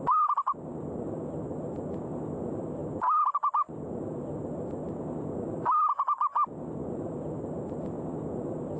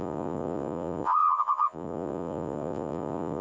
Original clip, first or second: first